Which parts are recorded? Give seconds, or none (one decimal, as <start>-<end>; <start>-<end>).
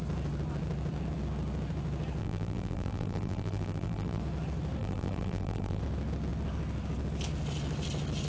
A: 0.0-2.2; 4.2-4.8; 5.8-8.3